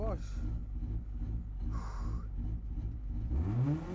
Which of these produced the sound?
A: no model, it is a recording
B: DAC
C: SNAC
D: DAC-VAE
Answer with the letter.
A